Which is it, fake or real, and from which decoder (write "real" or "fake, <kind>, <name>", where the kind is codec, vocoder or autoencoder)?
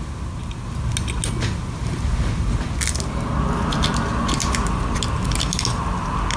real